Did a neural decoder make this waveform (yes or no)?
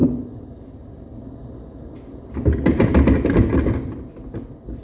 no